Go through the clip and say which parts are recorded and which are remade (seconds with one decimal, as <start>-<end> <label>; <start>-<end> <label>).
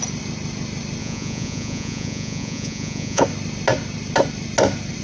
0.0-1.0 recorded; 1.0-3.2 remade; 3.2-5.0 recorded